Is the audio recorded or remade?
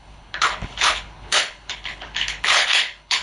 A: remade